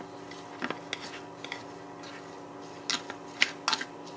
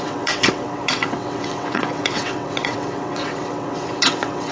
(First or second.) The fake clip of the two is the second